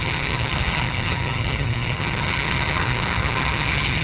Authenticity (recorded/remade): remade